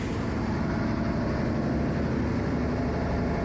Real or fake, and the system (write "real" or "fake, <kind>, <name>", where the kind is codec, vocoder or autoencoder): real